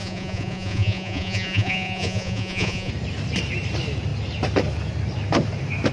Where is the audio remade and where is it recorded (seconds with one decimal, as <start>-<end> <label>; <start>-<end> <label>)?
0.0-2.9 remade; 2.9-5.9 recorded